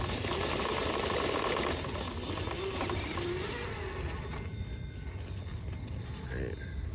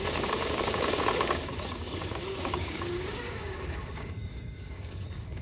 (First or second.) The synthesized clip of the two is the second